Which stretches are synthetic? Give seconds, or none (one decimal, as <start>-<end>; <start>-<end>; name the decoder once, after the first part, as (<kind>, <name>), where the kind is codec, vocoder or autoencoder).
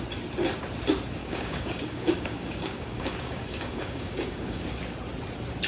1.2-4.6 (codec, DAC)